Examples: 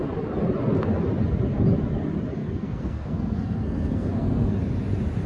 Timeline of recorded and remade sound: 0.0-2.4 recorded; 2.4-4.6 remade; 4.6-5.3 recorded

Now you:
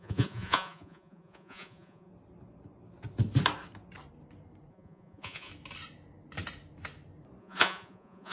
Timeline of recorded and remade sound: 0.0-2.1 remade; 2.1-4.7 recorded; 4.7-5.5 remade; 5.5-7.4 recorded; 7.4-8.3 remade

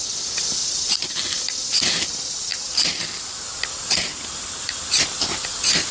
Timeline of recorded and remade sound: 0.0-5.9 recorded

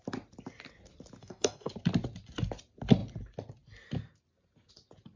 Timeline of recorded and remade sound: 0.0-1.2 recorded; 1.2-1.7 remade; 1.7-5.2 recorded

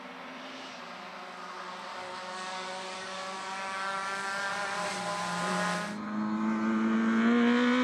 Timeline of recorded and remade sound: 0.0-1.9 recorded; 1.9-4.5 remade; 4.5-7.8 recorded

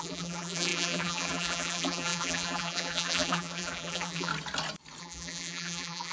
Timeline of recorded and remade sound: 0.0-4.3 remade; 4.3-5.0 recorded; 5.0-6.1 remade

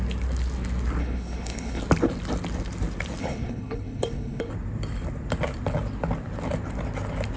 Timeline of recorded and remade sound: 0.0-1.0 recorded; 1.0-1.8 remade; 1.8-3.2 recorded; 3.2-4.5 remade; 4.5-7.4 recorded

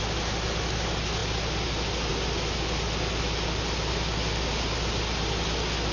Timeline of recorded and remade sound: 0.0-5.9 recorded